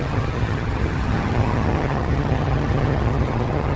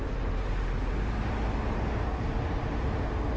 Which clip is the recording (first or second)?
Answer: second